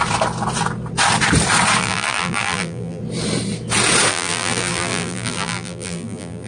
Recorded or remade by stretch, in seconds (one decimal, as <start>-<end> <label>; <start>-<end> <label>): 0.0-1.8 recorded; 1.8-3.0 remade; 3.0-4.1 recorded; 4.1-6.5 remade